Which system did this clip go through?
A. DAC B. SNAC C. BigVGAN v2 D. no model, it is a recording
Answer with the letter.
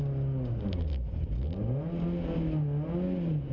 D